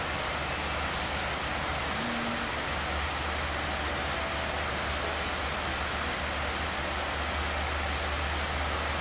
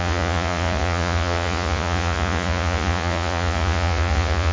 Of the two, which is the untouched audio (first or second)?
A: first